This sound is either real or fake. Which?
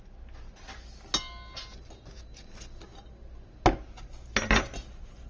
real